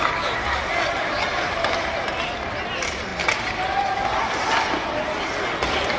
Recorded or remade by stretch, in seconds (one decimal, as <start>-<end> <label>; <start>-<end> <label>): 0.0-6.0 recorded